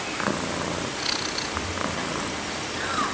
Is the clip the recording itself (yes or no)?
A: yes